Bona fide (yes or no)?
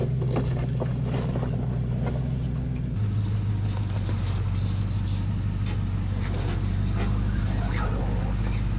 yes